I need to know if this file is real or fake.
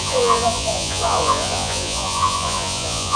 fake